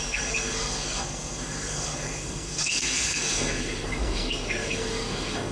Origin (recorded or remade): remade